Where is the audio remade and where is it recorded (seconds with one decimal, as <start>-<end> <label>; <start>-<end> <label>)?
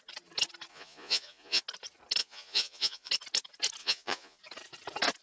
0.0-0.7 recorded; 0.7-1.6 remade; 1.6-2.2 recorded; 2.2-3.1 remade; 3.1-3.8 recorded; 3.8-4.4 remade; 4.4-5.2 recorded